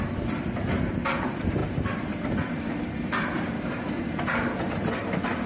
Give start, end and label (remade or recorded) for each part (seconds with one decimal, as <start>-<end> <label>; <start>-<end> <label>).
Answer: 0.0-5.5 remade